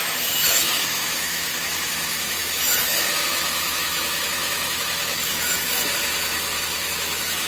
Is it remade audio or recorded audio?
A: remade